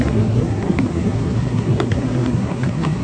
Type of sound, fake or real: fake